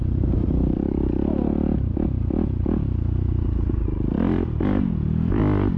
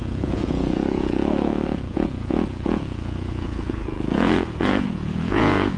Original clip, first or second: first